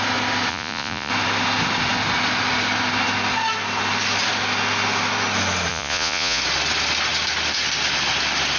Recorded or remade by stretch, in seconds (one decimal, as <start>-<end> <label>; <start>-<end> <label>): 0.0-0.5 recorded; 0.5-1.1 remade; 1.1-5.7 recorded; 5.7-6.4 remade; 6.4-8.6 recorded